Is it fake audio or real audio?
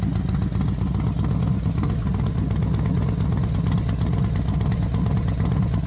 real